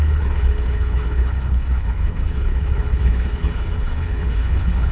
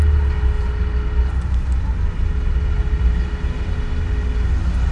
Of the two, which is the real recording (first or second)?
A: second